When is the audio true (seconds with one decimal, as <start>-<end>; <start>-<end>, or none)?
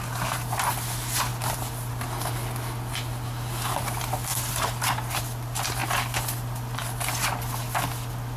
0.0-8.4